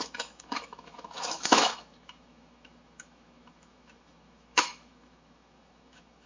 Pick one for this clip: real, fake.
fake